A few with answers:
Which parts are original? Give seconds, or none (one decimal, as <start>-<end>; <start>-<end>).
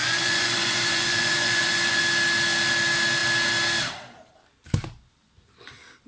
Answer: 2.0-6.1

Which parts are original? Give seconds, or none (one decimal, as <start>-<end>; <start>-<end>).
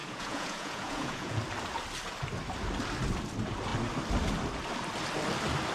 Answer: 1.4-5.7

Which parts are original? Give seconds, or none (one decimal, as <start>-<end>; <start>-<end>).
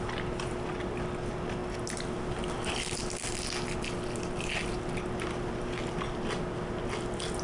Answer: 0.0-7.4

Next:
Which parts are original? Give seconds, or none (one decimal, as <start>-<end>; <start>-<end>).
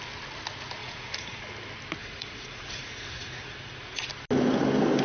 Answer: 0.0-0.8; 1.4-2.0; 4.1-5.0